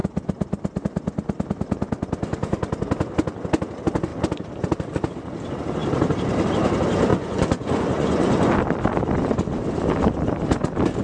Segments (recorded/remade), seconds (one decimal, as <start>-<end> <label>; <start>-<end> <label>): 0.0-7.1 recorded; 7.1-8.5 remade; 8.5-11.0 recorded